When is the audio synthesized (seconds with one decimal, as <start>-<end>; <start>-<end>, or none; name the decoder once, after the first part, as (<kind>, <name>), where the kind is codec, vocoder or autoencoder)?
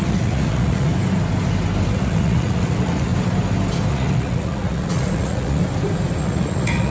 0.0-0.9 (vocoder, Vocos); 1.9-3.1; 3.9-5.6; 6.2-6.9